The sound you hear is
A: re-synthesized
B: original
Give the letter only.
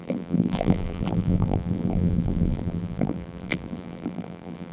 A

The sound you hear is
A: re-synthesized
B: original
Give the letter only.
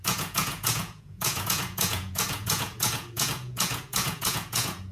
A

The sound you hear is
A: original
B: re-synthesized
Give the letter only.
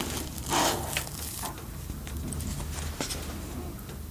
A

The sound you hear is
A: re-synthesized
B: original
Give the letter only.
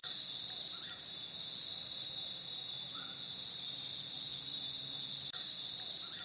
B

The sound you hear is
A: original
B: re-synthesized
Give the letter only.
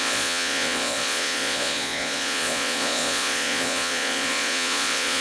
B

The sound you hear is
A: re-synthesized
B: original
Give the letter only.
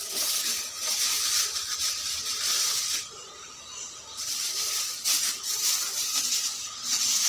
B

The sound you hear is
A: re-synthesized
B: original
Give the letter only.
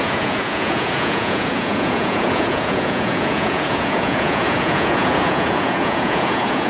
A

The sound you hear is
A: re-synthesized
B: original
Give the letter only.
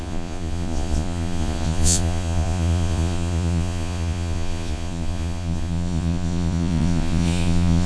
A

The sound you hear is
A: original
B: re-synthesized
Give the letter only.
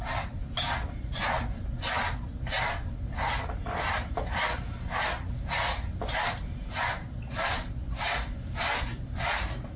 A